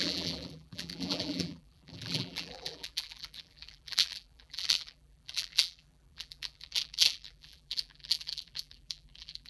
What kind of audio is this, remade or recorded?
remade